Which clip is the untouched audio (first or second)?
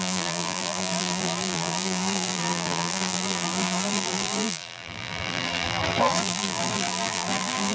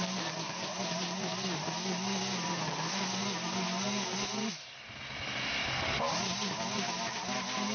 second